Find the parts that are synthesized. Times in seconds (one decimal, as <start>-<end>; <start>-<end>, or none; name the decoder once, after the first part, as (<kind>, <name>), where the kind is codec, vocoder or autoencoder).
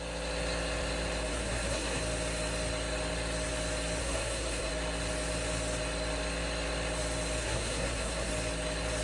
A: 1.3-2.0 (codec, SNAC); 4.0-4.7; 7.4-8.3